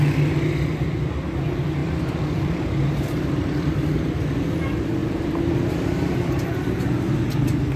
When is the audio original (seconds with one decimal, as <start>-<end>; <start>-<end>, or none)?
0.0-1.8; 4.3-5.0; 6.8-7.8